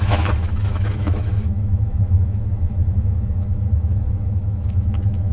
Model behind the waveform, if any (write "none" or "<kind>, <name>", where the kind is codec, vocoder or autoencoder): autoencoder, DAC-VAE